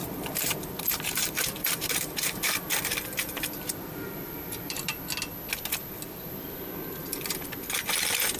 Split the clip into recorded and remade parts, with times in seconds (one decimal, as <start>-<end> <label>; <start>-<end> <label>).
0.0-5.0 remade; 5.0-8.4 recorded